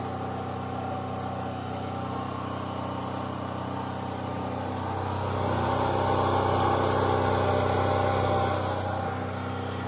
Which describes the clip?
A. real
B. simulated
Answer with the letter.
A